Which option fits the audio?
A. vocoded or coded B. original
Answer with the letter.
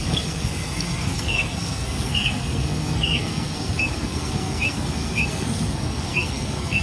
A